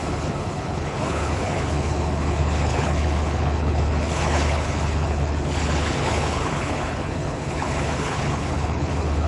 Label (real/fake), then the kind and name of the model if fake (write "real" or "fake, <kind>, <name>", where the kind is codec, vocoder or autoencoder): fake, codec, HILCodec